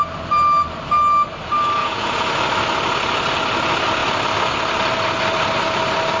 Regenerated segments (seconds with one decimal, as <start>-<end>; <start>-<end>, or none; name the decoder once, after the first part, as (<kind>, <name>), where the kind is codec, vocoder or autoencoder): 1.8-2.4 (vocoder, Vocos)